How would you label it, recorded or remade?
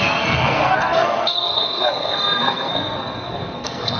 remade